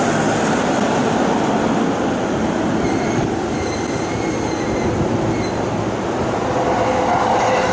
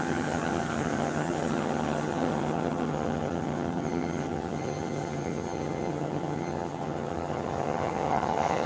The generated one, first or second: second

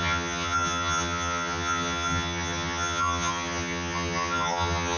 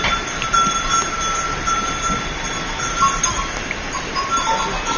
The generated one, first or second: first